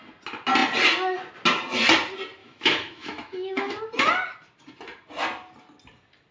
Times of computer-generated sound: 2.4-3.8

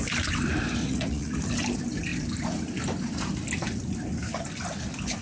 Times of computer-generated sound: 0.8-1.4